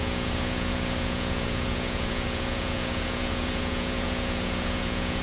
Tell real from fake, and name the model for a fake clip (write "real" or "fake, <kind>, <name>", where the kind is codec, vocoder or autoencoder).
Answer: fake, vocoder, Vocos